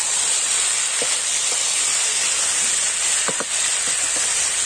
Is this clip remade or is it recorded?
recorded